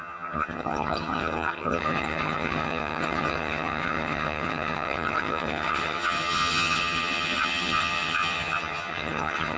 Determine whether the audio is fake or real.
fake